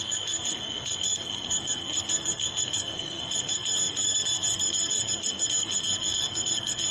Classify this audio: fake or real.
fake